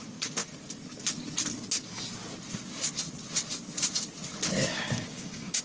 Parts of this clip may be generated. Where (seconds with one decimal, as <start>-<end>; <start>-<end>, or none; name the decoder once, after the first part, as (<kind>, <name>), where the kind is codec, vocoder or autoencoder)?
4.7-5.6 (codec, DAC)